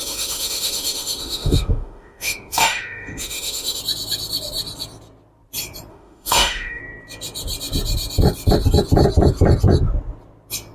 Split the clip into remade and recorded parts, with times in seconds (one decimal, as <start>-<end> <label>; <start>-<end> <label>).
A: 0.0-3.8 remade; 3.8-5.9 recorded; 5.9-6.8 remade; 6.8-10.7 recorded